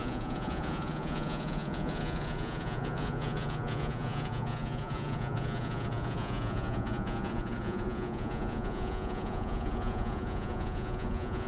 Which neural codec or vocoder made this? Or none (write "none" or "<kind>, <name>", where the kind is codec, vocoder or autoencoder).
vocoder, Vocos